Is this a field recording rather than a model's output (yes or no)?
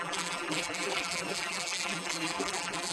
no